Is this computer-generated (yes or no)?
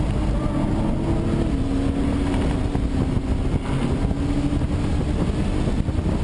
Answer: no